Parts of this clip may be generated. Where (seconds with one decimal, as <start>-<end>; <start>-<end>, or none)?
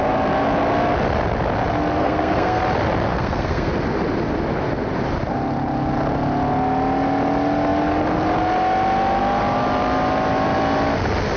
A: 2.0-2.6; 3.1-3.7